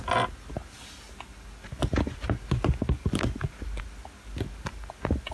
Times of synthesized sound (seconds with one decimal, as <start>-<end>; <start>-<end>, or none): none